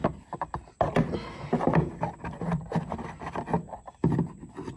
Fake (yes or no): no